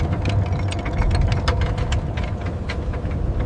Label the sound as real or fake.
real